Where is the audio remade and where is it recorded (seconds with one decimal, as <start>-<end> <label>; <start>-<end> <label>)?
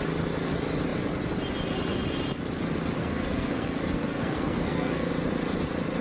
0.0-3.0 recorded; 3.0-5.1 remade; 5.1-6.0 recorded